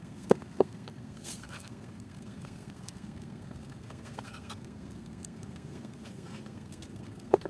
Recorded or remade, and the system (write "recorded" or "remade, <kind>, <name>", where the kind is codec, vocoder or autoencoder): remade, codec, SNAC